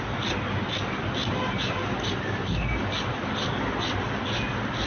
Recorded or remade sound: recorded